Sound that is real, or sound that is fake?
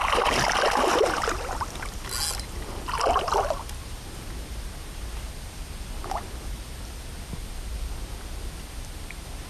real